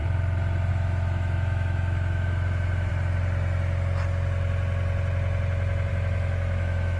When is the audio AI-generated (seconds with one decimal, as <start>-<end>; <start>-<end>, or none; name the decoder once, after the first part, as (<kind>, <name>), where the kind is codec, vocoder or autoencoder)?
0.7-2.9 (autoencoder, DAC-VAE); 5.9-7.0